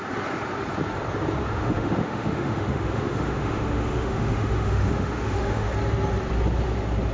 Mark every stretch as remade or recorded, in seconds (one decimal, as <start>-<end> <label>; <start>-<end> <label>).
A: 0.0-1.4 recorded; 1.4-5.7 remade; 5.7-7.1 recorded